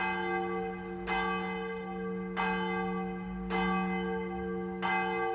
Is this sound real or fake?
real